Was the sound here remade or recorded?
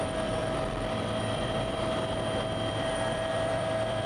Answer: remade